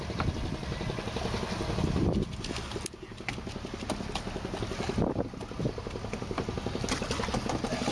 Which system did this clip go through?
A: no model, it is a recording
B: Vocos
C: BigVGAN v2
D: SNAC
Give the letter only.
A